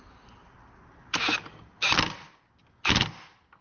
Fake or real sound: real